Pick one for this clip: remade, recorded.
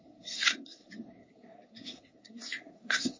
remade